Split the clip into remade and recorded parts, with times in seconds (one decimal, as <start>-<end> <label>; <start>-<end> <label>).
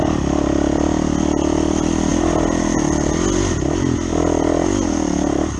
0.0-5.6 recorded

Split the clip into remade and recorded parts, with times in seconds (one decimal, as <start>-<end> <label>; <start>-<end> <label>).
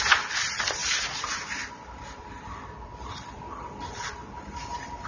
0.0-0.8 recorded; 0.8-3.9 remade; 3.9-5.1 recorded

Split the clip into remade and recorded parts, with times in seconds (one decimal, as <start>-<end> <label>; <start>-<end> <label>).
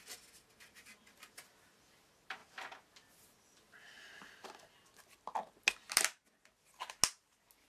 0.0-7.7 recorded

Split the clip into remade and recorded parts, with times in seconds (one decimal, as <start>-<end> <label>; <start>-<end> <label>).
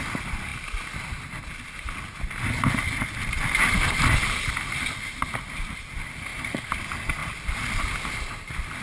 0.0-6.3 recorded; 6.3-6.8 remade; 6.8-8.8 recorded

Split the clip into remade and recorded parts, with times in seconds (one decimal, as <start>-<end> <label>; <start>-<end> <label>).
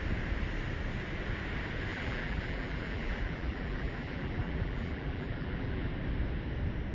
0.0-1.9 recorded; 1.9-5.9 remade; 5.9-6.9 recorded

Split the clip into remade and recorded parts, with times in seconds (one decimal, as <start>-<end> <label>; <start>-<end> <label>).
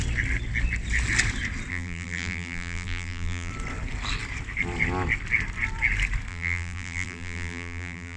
0.0-1.7 recorded; 1.7-3.5 remade; 3.5-6.3 recorded; 6.3-8.2 remade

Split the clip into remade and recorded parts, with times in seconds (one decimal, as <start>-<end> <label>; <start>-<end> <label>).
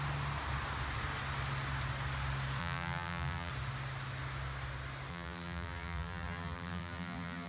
0.0-2.6 recorded; 2.6-3.5 remade; 3.5-5.1 recorded; 5.1-7.5 remade